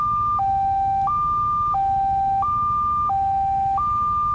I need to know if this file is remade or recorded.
recorded